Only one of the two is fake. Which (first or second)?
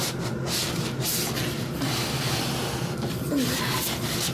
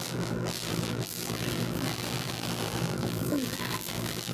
second